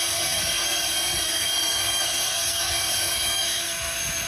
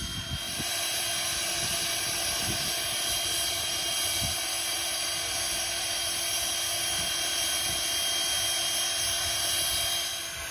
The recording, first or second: second